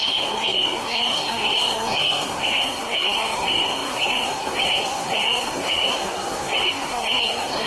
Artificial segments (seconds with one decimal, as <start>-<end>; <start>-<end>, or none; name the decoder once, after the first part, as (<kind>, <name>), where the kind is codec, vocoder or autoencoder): 0.0-7.7 (codec, SNAC)